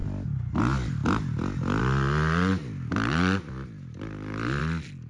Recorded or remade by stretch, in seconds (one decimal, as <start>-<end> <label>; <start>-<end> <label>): 0.0-5.1 recorded